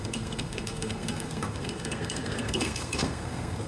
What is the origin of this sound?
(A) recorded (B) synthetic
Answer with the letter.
B